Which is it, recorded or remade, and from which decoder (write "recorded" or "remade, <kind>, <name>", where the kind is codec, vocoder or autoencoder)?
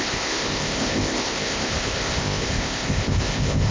remade, codec, ZipCodec